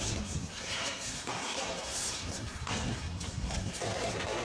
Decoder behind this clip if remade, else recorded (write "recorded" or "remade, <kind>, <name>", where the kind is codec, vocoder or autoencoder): remade, codec, SNAC